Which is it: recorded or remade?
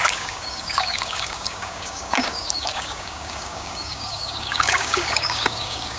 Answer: remade